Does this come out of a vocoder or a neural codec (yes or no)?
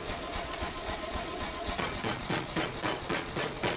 yes